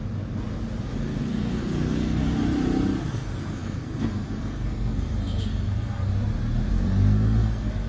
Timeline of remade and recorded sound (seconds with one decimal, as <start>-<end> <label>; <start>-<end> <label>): 0.0-1.2 recorded; 1.2-2.2 remade; 2.2-3.1 recorded; 3.1-6.1 remade; 6.1-6.7 recorded; 6.7-7.9 remade